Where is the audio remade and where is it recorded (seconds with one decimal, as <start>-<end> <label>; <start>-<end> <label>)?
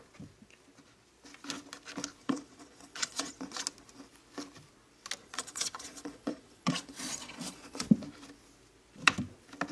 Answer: 0.0-2.2 recorded; 2.2-3.6 remade; 3.6-5.2 recorded; 5.2-7.9 remade; 7.9-9.7 recorded